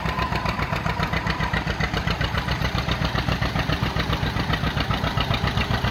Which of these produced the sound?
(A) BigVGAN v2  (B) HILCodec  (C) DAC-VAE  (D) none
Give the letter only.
A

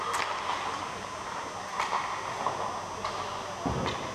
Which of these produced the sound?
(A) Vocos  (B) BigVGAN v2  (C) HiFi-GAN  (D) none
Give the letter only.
D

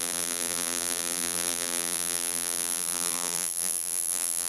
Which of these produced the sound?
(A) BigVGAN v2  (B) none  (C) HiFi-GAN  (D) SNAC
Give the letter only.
A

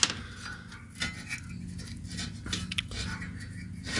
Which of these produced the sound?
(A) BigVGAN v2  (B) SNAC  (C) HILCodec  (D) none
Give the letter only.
D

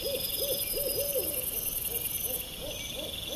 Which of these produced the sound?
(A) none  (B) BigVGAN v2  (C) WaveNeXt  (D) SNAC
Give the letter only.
A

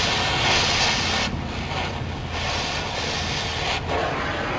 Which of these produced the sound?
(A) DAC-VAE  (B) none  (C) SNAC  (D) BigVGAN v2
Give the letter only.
B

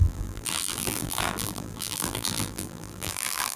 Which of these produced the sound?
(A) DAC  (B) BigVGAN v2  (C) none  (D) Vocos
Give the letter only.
B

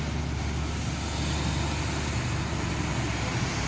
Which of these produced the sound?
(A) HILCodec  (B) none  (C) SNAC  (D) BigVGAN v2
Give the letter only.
B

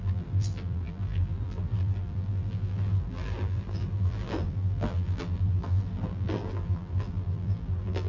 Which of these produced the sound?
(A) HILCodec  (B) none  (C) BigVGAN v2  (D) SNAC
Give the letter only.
C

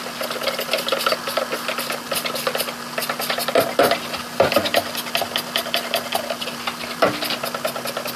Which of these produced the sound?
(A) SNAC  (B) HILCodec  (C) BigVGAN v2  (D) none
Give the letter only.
D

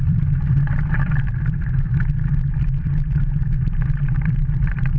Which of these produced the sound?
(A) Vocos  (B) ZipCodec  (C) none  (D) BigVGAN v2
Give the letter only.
D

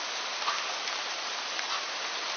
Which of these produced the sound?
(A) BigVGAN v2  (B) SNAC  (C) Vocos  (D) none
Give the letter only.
D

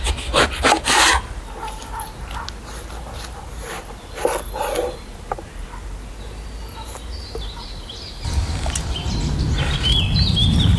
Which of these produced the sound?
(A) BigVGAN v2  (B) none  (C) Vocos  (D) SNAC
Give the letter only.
B